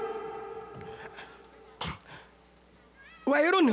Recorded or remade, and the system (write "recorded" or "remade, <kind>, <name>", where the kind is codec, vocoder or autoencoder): recorded